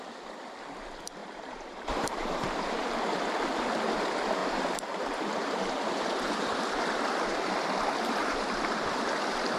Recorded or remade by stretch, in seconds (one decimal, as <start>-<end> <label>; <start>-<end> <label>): 0.0-1.2 recorded; 1.2-2.9 remade; 2.9-4.4 recorded; 4.4-6.6 remade; 6.6-8.2 recorded; 8.2-9.0 remade; 9.0-9.6 recorded